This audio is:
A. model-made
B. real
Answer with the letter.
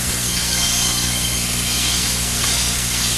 A